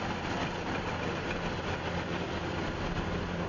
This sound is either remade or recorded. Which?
recorded